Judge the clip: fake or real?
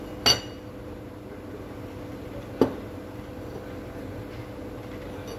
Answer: real